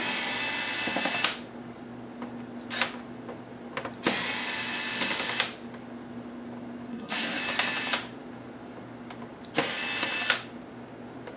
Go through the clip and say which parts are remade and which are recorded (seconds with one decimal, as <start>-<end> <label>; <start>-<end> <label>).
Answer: 0.0-6.9 recorded; 6.9-7.4 remade; 7.4-11.4 recorded